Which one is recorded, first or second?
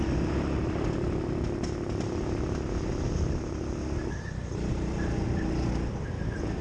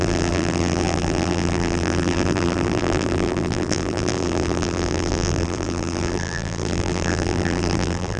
first